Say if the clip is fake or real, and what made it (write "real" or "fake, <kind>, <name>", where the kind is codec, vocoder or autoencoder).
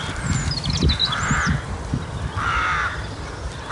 real